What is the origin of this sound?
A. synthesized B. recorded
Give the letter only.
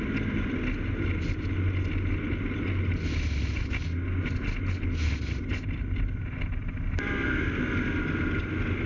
B